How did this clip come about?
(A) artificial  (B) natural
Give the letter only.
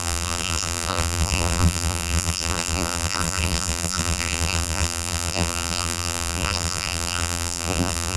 A